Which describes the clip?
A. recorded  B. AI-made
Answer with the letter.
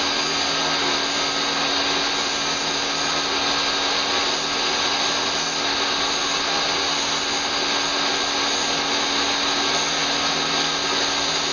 A